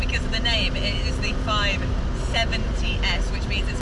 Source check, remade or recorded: recorded